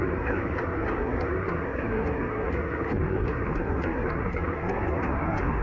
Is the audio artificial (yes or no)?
yes